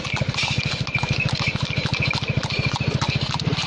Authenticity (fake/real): real